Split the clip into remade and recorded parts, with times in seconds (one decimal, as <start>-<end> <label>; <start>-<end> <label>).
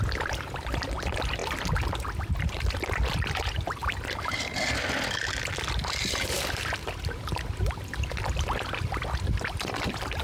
0.0-1.4 remade; 1.4-2.4 recorded; 2.4-3.8 remade; 3.8-5.4 recorded; 5.4-10.2 remade